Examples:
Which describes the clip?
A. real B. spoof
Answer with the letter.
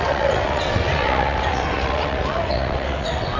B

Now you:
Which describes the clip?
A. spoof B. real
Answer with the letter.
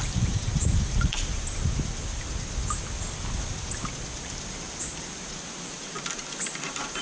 B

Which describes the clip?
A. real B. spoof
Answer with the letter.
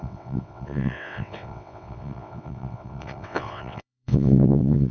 B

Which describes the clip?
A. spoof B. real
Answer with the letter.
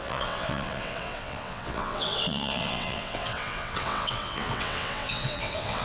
A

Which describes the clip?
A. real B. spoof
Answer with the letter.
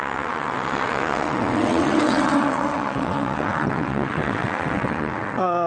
B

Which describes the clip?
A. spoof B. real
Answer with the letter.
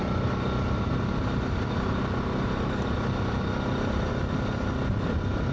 B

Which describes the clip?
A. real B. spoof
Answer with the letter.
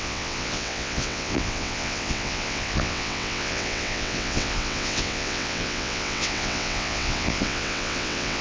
B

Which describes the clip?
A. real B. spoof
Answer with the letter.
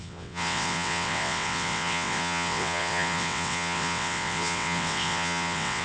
B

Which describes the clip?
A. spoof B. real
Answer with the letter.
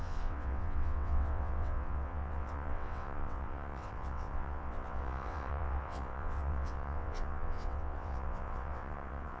A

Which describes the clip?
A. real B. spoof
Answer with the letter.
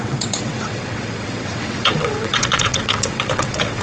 B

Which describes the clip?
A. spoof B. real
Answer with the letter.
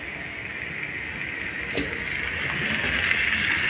B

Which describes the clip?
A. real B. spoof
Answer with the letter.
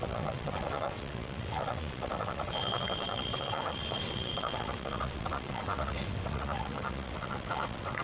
B